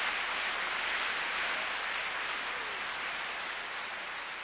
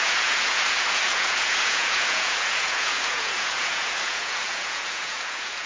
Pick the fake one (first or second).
second